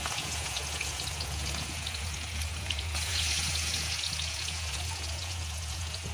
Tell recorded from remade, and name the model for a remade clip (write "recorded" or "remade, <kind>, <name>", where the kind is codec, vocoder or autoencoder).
remade, vocoder, Vocos